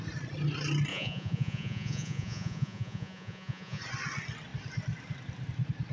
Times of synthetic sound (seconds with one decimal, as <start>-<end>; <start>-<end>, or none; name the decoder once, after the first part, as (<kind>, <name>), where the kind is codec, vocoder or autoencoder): 0.9-3.8 (vocoder, Vocos)